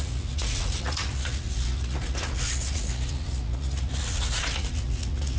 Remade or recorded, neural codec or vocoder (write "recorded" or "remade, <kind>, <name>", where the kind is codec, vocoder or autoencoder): remade, vocoder, Vocos